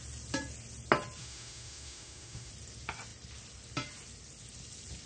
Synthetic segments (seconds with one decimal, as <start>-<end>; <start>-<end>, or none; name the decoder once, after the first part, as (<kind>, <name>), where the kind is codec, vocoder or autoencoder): 1.2-2.5 (autoencoder, DAC-VAE)